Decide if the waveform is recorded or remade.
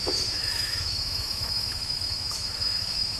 remade